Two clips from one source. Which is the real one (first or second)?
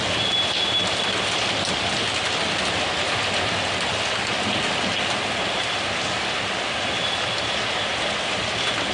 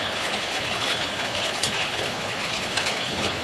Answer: first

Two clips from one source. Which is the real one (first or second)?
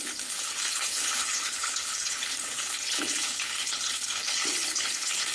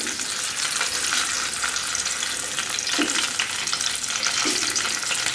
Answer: second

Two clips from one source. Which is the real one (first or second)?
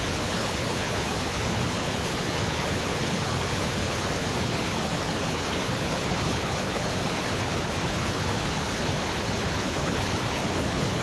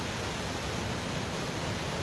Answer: second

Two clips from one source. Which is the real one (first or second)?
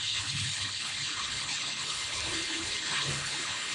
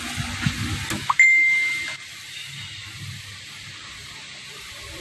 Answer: second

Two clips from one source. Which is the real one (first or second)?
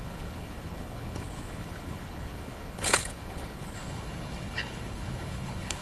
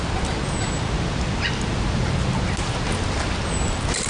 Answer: second